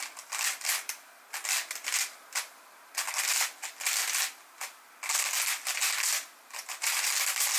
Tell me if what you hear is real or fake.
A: real